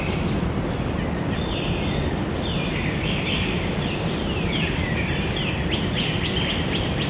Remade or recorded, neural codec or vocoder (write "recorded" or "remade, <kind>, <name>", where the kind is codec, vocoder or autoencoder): recorded